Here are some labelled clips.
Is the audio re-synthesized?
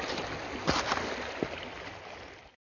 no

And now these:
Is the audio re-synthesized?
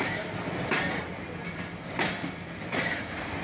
no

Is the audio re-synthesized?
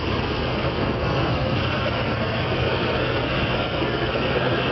yes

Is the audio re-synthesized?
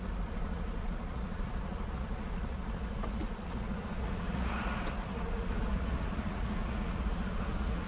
yes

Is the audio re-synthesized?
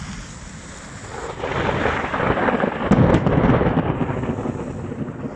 no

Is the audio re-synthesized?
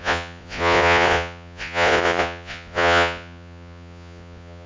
yes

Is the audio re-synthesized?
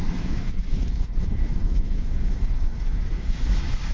yes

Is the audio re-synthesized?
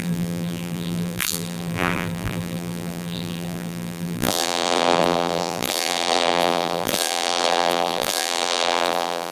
yes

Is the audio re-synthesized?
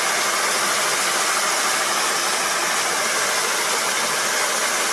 no